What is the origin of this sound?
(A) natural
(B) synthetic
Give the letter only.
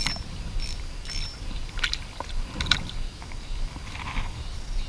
A